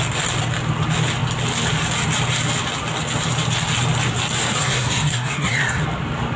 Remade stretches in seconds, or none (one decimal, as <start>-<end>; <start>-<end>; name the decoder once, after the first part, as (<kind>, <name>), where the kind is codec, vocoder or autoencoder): 4.6-5.8 (codec, SNAC)